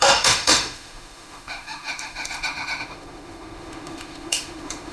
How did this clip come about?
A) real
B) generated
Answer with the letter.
B